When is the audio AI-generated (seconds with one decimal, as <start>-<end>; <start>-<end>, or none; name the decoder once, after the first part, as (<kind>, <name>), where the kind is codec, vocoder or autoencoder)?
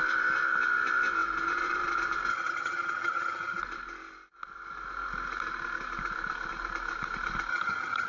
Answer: 2.3-3.6 (vocoder, HiFi-GAN); 7.5-8.1